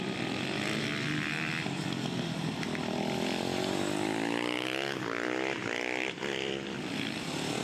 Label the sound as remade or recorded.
remade